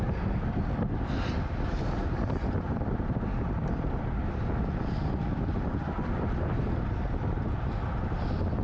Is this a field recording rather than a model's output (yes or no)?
yes